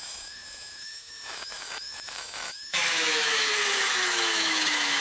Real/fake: fake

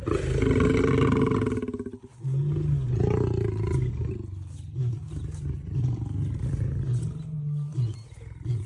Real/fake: real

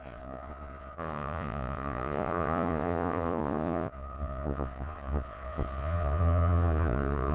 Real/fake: fake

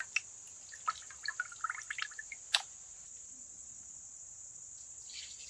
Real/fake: real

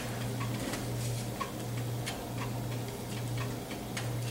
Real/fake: real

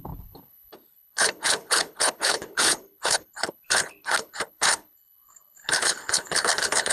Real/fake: fake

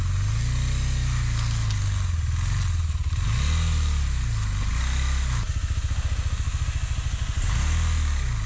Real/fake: real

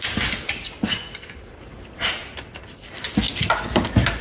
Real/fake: real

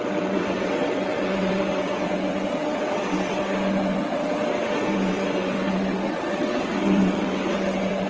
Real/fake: fake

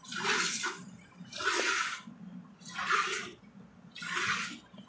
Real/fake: real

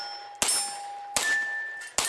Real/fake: real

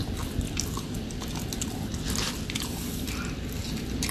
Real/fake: real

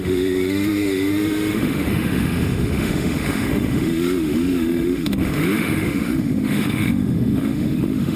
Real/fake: fake